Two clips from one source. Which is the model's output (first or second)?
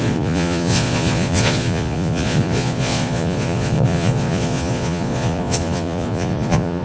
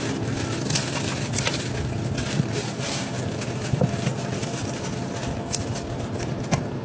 first